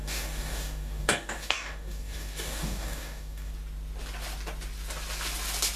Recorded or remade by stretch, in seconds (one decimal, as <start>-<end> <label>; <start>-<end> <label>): 0.0-3.5 remade; 3.5-5.8 recorded